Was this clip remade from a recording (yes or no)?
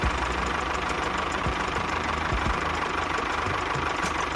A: yes